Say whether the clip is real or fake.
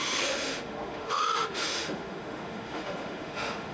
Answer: fake